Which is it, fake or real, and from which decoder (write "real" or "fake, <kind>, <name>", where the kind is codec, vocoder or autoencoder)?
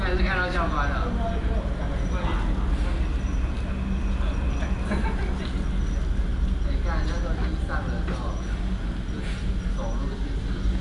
real